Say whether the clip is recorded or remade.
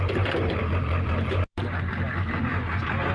remade